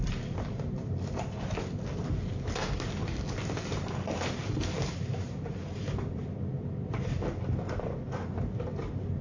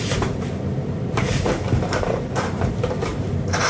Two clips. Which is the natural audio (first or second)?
first